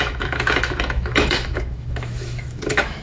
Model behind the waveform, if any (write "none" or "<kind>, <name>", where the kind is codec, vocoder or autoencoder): autoencoder, DAC-VAE